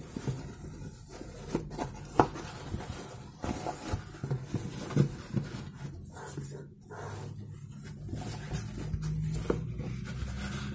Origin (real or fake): real